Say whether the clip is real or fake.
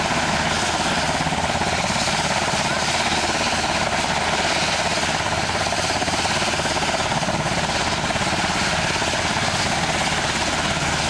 real